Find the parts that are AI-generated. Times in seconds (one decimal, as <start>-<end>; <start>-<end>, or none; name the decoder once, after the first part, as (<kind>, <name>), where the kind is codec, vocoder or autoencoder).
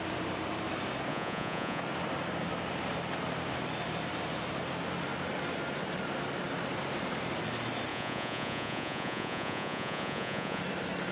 1.1-1.8 (vocoder, Vocos); 7.9-10.6